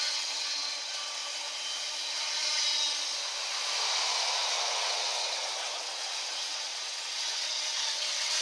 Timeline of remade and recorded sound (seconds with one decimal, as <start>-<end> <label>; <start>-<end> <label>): 0.0-1.2 remade; 1.2-4.7 recorded; 4.7-8.4 remade